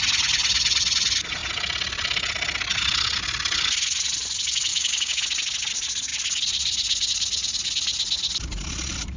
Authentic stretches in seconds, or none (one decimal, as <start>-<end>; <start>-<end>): 0.0-4.7; 5.2-9.2